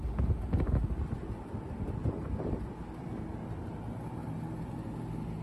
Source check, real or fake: real